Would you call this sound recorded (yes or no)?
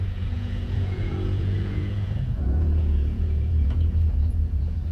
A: no